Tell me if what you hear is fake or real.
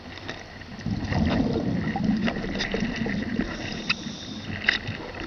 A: real